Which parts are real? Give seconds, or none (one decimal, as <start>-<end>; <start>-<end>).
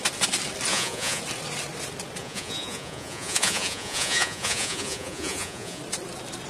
0.0-0.7; 1.2-2.2; 5.8-6.5